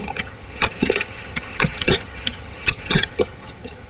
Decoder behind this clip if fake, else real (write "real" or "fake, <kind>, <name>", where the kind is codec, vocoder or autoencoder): fake, vocoder, HiFi-GAN